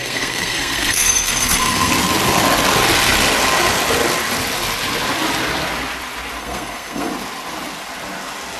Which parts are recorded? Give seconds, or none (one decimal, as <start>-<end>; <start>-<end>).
1.9-6.4; 7.1-8.6

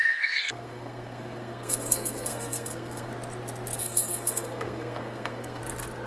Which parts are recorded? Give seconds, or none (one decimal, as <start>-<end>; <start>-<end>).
3.1-3.8; 5.6-6.1